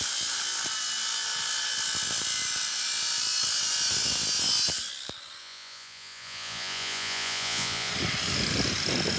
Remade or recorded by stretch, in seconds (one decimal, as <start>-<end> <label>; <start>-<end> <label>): 0.0-5.4 recorded; 5.4-7.9 remade; 7.9-9.2 recorded